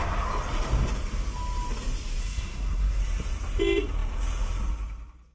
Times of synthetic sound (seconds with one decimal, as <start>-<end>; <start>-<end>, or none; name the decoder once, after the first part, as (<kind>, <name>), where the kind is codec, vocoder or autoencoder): 2.2-3.0 (codec, SNAC)

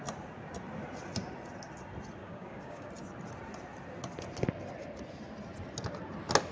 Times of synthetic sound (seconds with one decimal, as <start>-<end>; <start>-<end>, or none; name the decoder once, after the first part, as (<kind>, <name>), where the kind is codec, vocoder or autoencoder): 2.2-2.9 (codec, DAC)